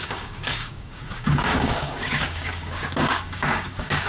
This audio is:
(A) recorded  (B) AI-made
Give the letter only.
B